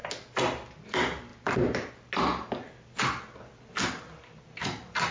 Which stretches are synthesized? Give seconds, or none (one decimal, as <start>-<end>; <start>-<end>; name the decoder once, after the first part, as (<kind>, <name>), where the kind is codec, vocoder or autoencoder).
none